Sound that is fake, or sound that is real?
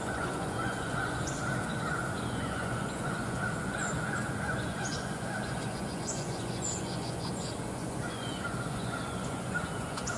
fake